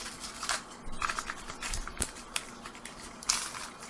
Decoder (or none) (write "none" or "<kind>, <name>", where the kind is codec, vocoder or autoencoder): none